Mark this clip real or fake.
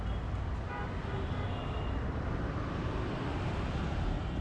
real